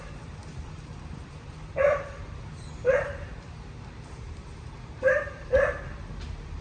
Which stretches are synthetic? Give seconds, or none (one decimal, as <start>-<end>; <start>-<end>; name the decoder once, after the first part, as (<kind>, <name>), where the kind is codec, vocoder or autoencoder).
0.0-6.6 (vocoder, BigVGAN v2)